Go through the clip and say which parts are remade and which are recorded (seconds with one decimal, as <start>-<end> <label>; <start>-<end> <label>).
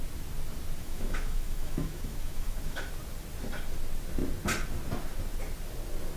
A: 0.0-0.8 recorded; 0.8-2.9 remade; 2.9-6.2 recorded